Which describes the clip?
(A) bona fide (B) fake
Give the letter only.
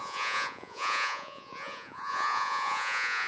B